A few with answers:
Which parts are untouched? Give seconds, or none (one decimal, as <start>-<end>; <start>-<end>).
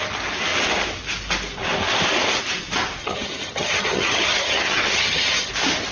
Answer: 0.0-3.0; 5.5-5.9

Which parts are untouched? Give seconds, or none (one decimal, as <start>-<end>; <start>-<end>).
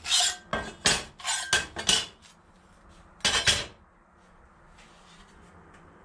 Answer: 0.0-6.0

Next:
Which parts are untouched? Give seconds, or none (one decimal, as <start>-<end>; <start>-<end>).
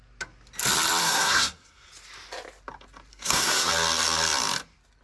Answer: 0.0-1.0; 1.9-3.1; 3.7-5.0